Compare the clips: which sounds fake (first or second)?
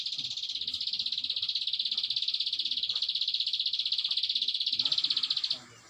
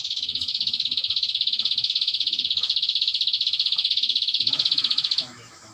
second